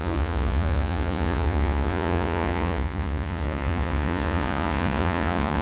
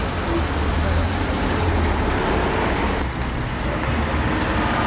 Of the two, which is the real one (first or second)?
second